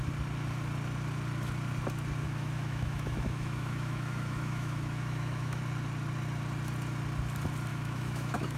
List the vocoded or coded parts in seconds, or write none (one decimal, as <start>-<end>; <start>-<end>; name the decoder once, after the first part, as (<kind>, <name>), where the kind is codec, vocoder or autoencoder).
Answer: 2.2-5.6 (autoencoder, DAC-VAE); 7.7-8.6